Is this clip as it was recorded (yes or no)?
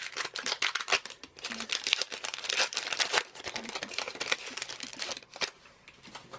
no